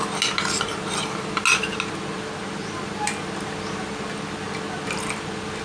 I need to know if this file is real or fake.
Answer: real